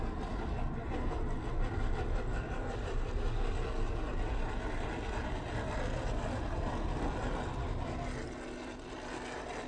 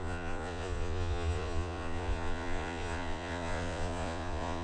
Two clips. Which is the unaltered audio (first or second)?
first